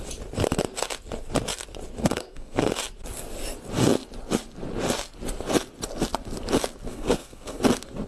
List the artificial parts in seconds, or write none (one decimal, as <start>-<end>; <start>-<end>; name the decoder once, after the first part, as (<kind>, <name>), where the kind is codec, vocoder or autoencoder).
2.0-2.6 (codec, SNAC); 6.9-7.6